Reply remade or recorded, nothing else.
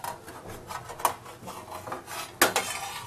recorded